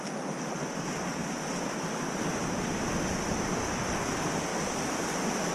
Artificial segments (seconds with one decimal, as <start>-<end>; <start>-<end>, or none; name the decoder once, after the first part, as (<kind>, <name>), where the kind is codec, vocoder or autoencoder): none